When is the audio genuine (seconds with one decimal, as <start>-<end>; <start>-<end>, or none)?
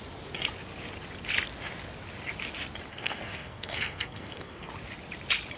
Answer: 0.0-2.9; 4.7-5.6